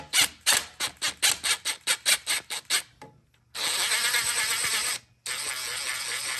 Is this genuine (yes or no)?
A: yes